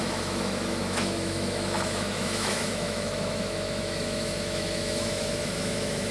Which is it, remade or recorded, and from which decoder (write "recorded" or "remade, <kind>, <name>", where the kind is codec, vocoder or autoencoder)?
remade, autoencoder, DAC-VAE